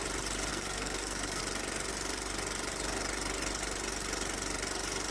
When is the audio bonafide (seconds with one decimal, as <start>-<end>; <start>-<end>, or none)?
0.0-0.5; 1.4-5.1